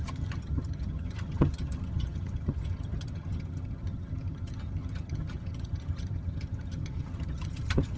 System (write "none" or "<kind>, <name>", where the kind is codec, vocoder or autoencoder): vocoder, HiFi-GAN